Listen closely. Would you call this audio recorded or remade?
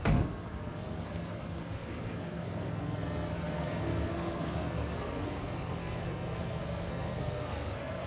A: remade